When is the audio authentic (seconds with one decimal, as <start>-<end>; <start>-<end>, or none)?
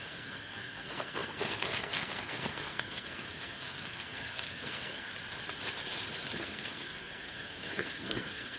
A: 5.1-6.4